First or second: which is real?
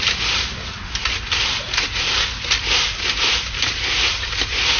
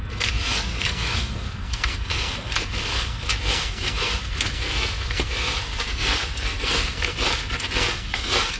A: first